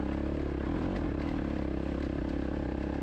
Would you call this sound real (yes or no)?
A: yes